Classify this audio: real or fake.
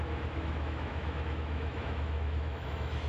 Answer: fake